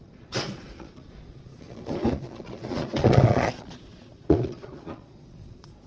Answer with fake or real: fake